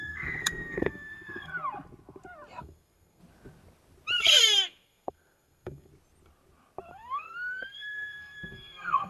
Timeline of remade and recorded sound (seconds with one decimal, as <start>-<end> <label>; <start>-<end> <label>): 0.0-1.5 remade; 1.5-2.6 recorded; 2.6-3.2 remade; 3.2-4.1 recorded; 4.1-5.9 remade; 5.9-6.9 recorded; 6.9-9.1 remade